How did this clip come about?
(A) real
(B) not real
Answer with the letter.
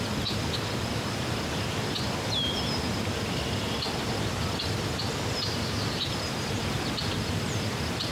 A